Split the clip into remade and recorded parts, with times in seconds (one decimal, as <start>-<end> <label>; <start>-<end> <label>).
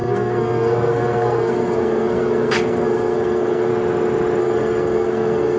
0.0-3.7 remade; 3.7-4.4 recorded; 4.4-5.6 remade